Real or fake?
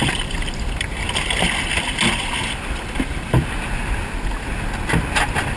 real